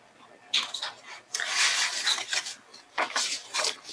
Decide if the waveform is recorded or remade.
recorded